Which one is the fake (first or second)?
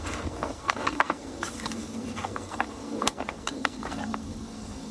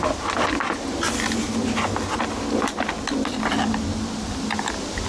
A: first